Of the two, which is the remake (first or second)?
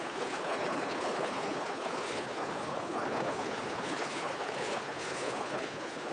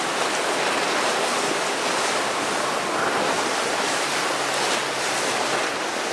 first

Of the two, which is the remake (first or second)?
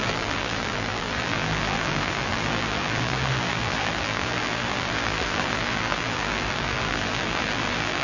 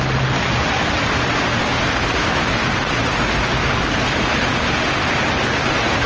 first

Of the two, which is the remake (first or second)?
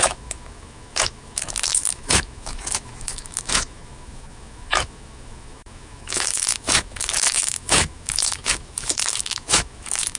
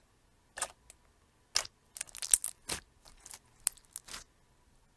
first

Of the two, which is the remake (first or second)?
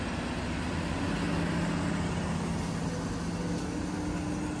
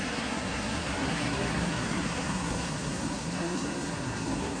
second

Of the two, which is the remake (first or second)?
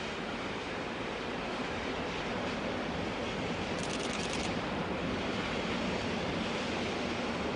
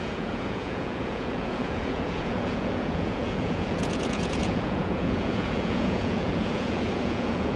second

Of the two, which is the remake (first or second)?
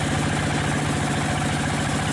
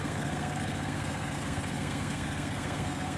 second